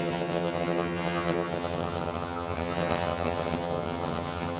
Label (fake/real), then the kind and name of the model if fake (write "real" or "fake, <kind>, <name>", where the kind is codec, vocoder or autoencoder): fake, vocoder, HiFi-GAN